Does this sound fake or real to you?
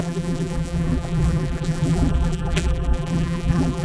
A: fake